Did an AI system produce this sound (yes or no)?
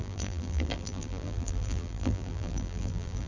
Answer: yes